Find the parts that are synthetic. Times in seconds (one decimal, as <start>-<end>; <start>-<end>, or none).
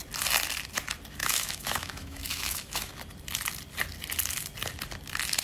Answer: 1.2-2.9